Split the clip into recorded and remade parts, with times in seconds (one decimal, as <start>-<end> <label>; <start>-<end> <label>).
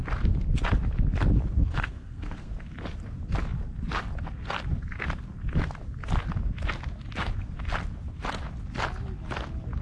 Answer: 0.0-1.6 recorded; 1.6-2.5 remade; 2.5-9.8 recorded